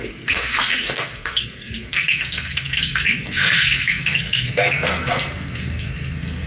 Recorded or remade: remade